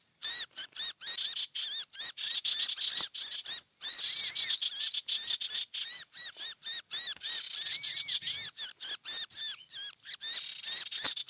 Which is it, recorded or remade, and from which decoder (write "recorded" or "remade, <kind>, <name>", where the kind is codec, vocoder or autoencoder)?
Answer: recorded